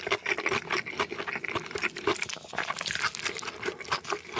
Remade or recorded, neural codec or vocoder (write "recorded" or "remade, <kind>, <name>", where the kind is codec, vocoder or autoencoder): recorded